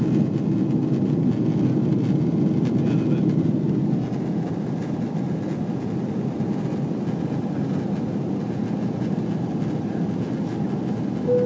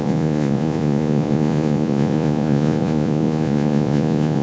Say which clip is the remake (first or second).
second